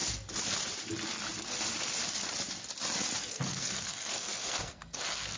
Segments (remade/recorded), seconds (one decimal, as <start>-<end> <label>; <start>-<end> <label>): 0.0-3.2 recorded; 3.2-5.4 remade